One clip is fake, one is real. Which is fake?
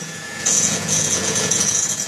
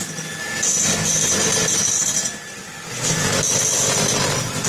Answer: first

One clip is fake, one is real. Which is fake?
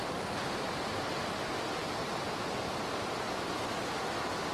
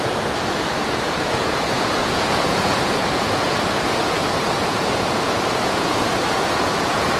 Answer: second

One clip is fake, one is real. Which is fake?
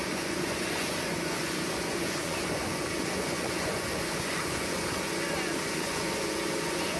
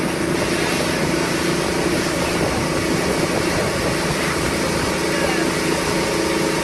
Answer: first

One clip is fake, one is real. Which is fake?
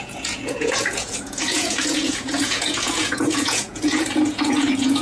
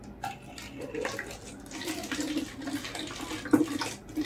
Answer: first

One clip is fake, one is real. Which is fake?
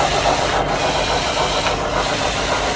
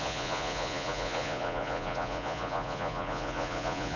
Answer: second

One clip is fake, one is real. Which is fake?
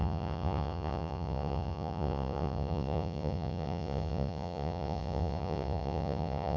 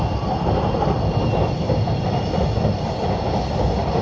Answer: first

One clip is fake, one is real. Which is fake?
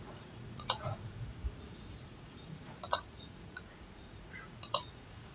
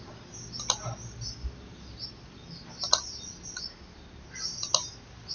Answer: first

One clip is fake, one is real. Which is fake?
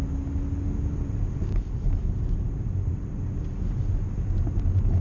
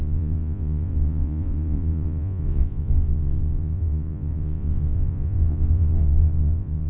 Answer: second